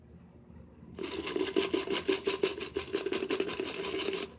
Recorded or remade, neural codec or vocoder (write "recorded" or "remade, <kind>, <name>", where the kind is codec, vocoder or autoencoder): recorded